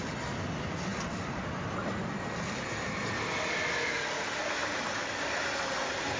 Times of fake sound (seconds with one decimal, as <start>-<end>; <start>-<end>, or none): none